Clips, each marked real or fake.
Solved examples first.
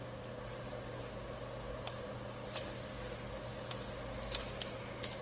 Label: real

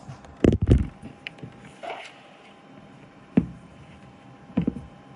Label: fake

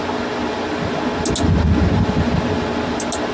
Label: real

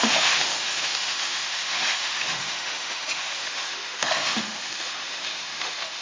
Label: fake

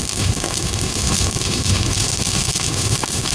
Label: fake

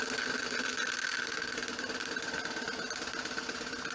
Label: real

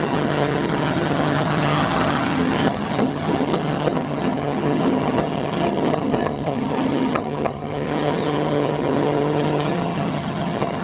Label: fake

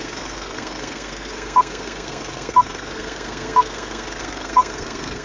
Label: fake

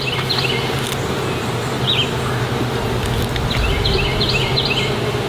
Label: real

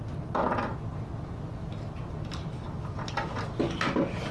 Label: real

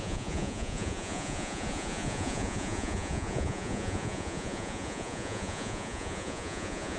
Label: fake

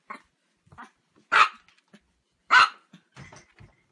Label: real